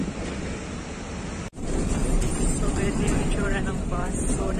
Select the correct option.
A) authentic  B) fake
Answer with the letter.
B